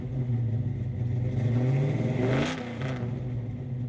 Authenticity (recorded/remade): recorded